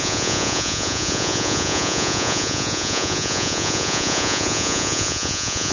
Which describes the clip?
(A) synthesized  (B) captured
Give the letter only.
A